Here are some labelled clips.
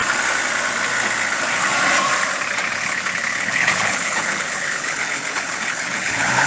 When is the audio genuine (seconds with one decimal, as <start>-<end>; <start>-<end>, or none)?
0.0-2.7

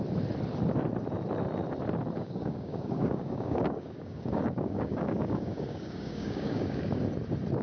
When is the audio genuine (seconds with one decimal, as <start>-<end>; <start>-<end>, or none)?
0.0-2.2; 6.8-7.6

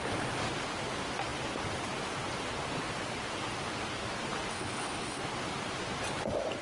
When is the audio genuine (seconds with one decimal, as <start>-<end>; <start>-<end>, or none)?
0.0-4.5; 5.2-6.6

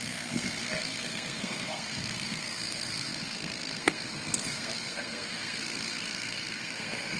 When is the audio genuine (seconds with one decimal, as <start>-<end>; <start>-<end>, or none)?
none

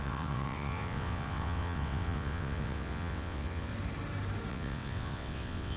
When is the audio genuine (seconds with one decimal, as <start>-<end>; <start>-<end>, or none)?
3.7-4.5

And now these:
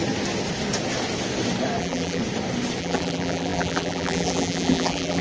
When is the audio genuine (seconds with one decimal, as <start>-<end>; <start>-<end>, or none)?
0.0-1.8; 2.2-2.8

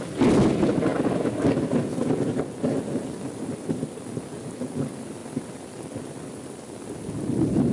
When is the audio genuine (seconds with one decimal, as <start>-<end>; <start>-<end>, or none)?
0.0-7.7